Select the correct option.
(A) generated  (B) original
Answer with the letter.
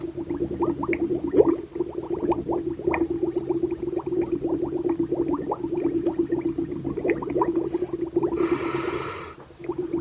B